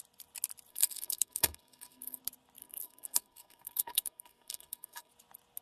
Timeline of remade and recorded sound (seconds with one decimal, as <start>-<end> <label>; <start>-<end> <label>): 0.0-0.7 recorded; 0.7-2.2 remade; 2.2-2.6 recorded; 2.6-5.1 remade; 5.1-5.6 recorded